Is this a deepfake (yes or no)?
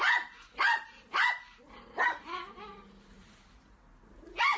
no